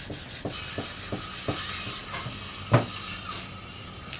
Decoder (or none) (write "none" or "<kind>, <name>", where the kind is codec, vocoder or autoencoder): none